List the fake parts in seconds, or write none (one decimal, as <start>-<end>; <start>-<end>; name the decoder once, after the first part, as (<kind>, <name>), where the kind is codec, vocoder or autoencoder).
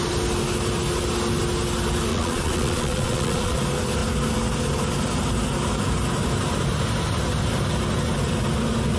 2.1-3.6 (vocoder, Vocos)